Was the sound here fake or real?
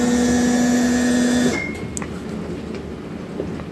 real